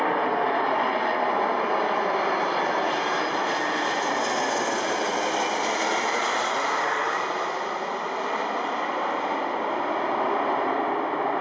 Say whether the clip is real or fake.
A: real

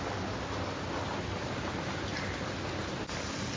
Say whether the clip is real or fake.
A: real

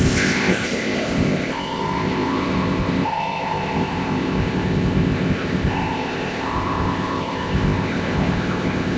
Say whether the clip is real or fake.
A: fake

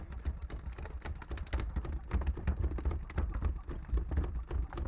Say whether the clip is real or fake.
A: real